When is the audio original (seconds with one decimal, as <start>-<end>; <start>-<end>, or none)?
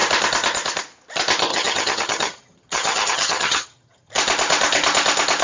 0.0-1.5; 4.1-5.4